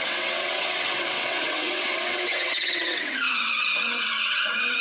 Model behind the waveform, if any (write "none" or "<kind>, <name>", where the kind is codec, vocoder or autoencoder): vocoder, WaveNeXt